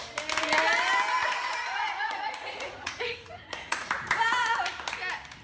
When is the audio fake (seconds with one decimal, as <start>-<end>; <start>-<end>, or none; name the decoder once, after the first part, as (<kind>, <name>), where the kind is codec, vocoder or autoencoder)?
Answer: 1.2-3.9 (vocoder, Vocos)